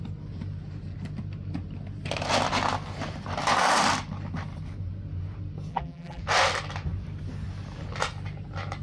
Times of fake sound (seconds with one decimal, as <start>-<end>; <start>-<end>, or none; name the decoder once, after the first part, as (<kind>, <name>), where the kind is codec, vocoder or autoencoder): 5.7-6.2 (vocoder, BigVGAN v2)

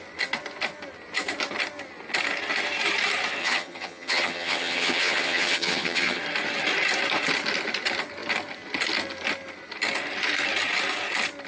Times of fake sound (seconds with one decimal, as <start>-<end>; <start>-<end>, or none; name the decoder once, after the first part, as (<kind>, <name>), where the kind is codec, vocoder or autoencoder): 3.4-6.2 (vocoder, HiFi-GAN)

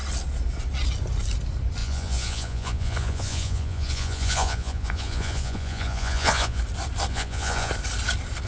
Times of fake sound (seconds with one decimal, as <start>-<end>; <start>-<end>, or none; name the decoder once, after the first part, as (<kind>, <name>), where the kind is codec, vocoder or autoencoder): 1.8-6.6 (vocoder, Vocos); 7.1-7.7

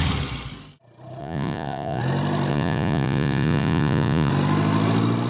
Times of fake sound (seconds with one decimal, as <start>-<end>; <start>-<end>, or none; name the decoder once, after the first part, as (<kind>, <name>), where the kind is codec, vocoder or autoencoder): 1.2-2.0 (vocoder, Vocos); 2.5-4.3